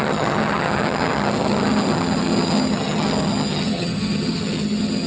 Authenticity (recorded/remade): remade